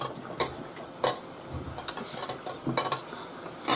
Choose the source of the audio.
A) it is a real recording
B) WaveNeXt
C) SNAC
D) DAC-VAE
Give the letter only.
A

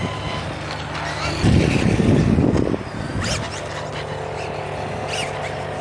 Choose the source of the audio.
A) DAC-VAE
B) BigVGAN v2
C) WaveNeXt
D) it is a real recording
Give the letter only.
D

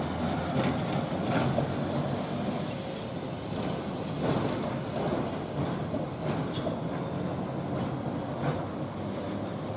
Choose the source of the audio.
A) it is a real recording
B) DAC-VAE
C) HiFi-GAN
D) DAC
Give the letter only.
A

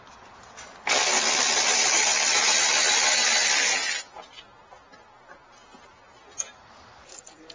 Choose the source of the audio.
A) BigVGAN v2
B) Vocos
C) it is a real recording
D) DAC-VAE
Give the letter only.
C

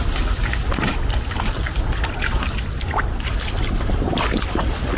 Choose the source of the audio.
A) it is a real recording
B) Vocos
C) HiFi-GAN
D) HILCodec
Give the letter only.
A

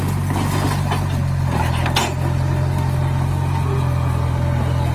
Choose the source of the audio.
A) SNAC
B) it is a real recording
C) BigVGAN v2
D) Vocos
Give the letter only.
B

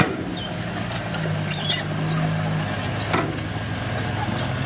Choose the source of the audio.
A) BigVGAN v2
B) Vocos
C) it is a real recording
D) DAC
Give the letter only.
C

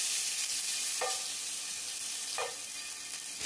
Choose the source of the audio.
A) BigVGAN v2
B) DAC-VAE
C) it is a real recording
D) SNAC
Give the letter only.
C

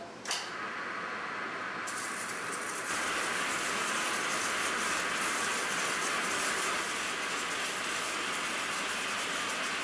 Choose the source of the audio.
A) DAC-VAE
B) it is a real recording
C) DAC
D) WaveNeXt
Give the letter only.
B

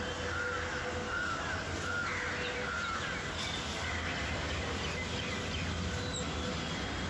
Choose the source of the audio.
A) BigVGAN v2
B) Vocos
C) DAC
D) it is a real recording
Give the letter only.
D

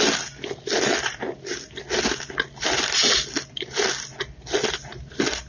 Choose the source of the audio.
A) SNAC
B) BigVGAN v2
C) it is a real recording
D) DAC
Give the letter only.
C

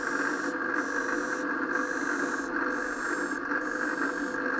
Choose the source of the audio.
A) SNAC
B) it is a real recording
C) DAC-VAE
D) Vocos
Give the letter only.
B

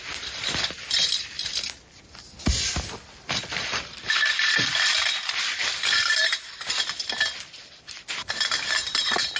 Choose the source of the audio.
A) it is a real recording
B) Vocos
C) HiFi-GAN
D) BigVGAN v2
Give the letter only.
D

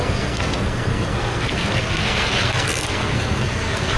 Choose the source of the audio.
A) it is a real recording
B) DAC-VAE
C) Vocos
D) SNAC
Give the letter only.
D